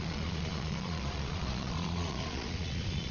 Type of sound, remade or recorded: remade